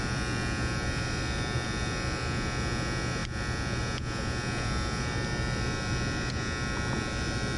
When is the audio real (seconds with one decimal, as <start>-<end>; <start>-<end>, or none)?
0.0-7.6